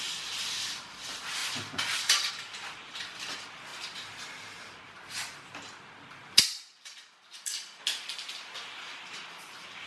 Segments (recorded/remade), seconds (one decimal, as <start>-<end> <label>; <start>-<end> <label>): 0.0-3.7 remade; 3.7-4.9 recorded; 4.9-9.9 remade